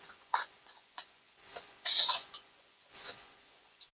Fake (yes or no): yes